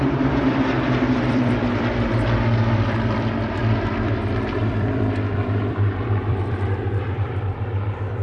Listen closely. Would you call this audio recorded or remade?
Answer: remade